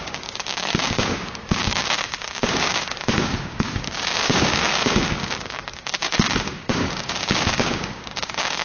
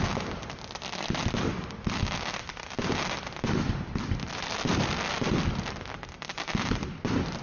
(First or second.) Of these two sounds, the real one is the second